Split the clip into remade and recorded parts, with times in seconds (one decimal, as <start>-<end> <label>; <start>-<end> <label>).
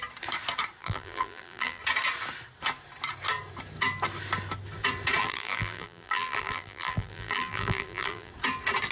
0.0-0.8 recorded; 0.8-1.8 remade; 1.8-5.2 recorded; 5.2-8.3 remade; 8.3-8.9 recorded